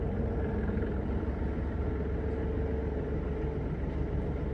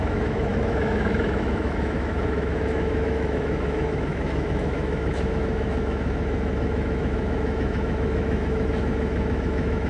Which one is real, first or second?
first